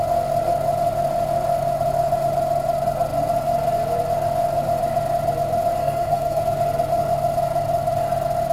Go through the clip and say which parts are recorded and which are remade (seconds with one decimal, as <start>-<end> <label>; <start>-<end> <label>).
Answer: 0.0-5.8 recorded; 5.8-6.4 remade; 6.4-8.5 recorded